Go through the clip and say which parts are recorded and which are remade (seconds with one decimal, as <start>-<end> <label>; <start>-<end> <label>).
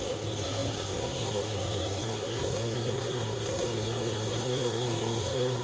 0.0-5.6 remade